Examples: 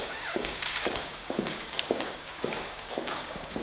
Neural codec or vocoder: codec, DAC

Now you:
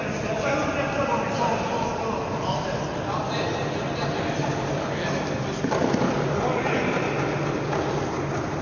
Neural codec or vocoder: none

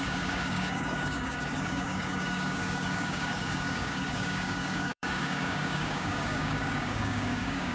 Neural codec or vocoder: codec, DAC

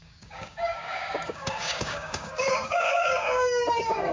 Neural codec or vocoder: codec, DAC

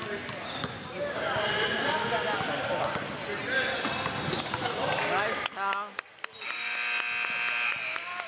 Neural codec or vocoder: none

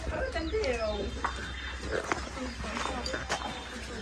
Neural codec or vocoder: none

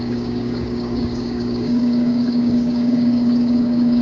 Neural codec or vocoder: codec, DAC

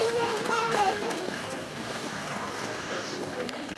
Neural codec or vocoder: codec, DAC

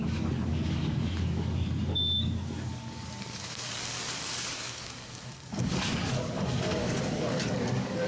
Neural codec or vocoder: codec, DAC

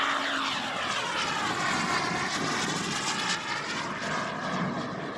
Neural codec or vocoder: none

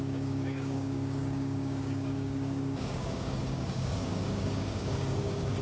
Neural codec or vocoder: codec, DAC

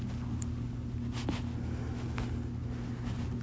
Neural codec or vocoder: none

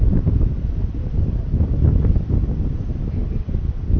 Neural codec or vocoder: none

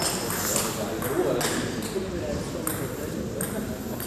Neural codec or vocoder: none